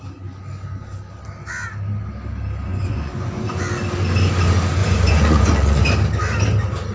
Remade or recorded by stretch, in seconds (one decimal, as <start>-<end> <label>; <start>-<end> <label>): 0.0-2.7 recorded; 2.7-3.6 remade; 3.6-4.8 recorded; 4.8-5.8 remade; 5.8-6.9 recorded